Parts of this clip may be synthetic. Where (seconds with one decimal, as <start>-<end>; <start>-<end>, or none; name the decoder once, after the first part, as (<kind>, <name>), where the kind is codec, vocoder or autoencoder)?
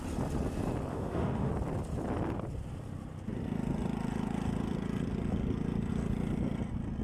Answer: 0.9-1.5 (autoencoder, DAC-VAE)